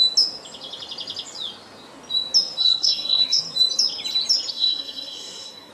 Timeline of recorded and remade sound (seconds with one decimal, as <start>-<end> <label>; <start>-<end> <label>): 0.0-2.6 recorded; 2.6-3.4 remade; 3.4-4.5 recorded; 4.5-5.7 remade